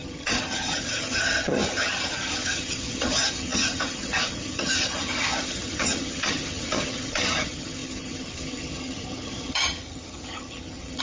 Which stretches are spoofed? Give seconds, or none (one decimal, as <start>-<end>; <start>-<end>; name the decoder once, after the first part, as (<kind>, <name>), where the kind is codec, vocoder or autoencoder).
0.0-11.0 (vocoder, HiFi-GAN)